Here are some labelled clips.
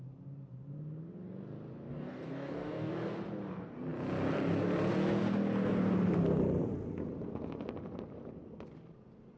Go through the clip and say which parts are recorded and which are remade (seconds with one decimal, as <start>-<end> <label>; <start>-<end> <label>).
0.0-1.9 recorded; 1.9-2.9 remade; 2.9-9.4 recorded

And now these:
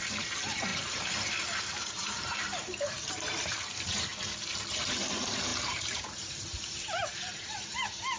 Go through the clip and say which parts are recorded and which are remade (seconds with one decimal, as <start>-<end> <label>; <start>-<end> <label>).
0.0-4.1 remade; 4.1-4.7 recorded; 4.7-8.2 remade

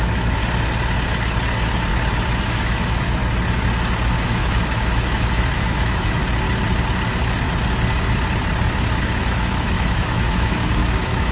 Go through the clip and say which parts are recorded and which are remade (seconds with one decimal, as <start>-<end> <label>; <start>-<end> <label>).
0.0-0.4 remade; 0.4-2.3 recorded; 2.3-3.2 remade; 3.2-4.2 recorded; 4.2-6.2 remade; 6.2-9.0 recorded; 9.0-11.3 remade

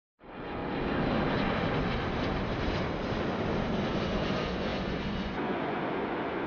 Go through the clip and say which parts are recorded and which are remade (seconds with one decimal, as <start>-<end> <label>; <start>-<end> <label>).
0.0-0.6 remade; 0.6-3.9 recorded; 3.9-6.5 remade

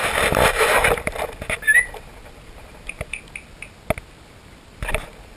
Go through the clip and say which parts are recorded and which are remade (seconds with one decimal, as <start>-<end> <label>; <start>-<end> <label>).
0.0-3.2 remade; 3.2-5.4 recorded

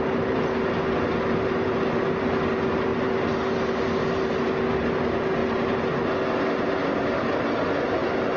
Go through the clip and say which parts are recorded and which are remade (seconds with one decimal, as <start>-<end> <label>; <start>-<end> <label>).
0.0-8.4 recorded

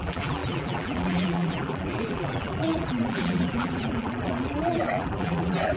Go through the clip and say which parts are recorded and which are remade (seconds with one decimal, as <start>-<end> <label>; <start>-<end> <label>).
0.0-5.8 remade

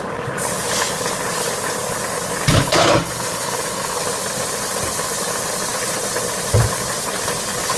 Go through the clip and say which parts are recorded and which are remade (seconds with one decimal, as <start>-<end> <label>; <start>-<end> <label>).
0.0-2.5 recorded; 2.5-4.0 remade; 4.0-7.8 recorded